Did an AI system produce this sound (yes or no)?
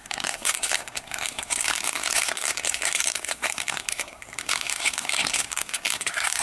yes